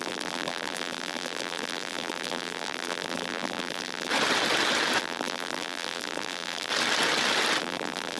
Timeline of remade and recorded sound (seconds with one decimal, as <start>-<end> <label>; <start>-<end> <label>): 0.0-4.1 remade; 4.1-5.0 recorded; 5.0-6.7 remade; 6.7-7.6 recorded; 7.6-8.2 remade